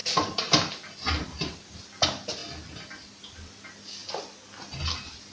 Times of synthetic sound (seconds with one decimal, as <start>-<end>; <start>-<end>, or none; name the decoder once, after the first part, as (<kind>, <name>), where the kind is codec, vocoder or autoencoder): none